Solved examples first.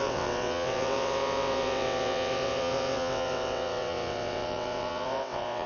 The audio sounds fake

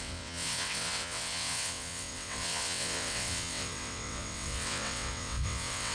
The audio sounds fake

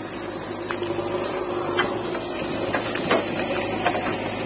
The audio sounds real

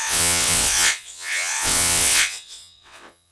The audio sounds fake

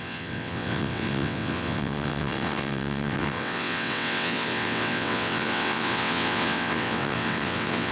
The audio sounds fake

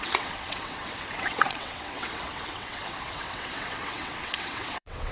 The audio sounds fake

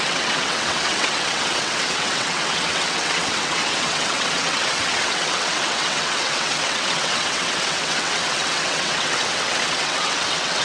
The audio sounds fake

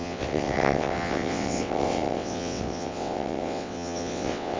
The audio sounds fake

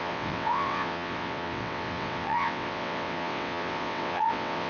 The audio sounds fake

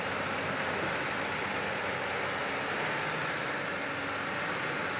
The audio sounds real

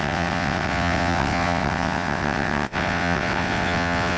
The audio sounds fake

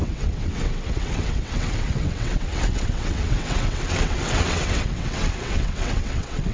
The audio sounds fake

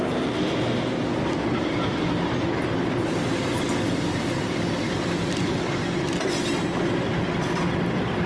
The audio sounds real